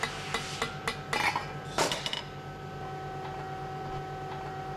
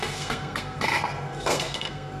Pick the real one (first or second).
first